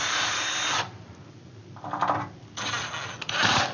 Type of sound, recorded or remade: recorded